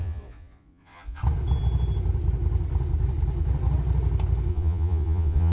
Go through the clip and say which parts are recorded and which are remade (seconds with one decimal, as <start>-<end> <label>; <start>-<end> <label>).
0.0-1.2 remade; 1.2-4.5 recorded; 4.5-5.5 remade